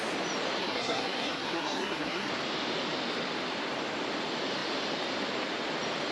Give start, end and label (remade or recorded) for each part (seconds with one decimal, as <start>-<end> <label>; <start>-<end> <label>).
0.0-0.6 recorded; 0.6-2.3 remade; 2.3-6.1 recorded